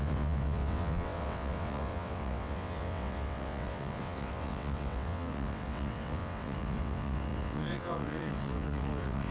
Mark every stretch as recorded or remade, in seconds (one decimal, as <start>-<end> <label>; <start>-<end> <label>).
0.0-9.3 remade